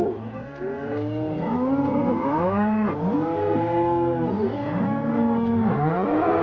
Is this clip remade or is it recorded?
recorded